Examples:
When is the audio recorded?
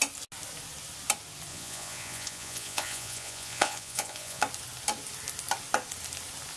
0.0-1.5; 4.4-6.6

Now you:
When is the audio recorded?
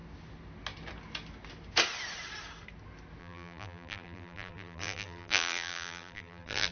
0.0-3.2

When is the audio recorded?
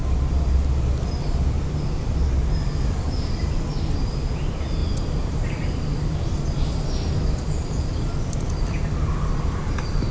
0.0-10.1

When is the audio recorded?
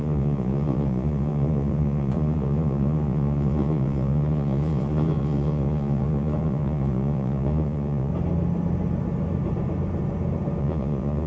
8.1-10.6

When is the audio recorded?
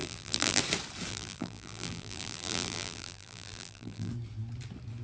0.6-1.1; 4.1-5.0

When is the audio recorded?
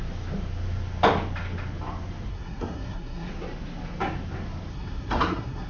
0.0-2.3; 3.3-4.7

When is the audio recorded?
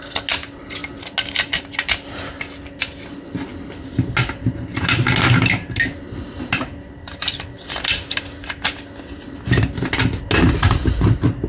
0.0-11.5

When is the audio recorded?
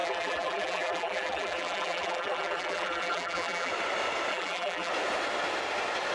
3.7-4.3; 4.9-6.1